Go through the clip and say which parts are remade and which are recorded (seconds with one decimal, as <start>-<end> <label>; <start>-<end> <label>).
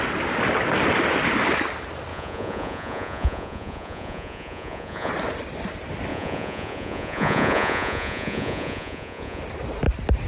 0.0-2.1 recorded; 2.1-5.1 remade; 5.1-6.1 recorded; 6.1-9.4 remade; 9.4-10.3 recorded